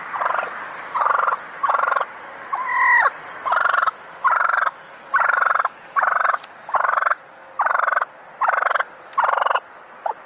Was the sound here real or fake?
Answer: real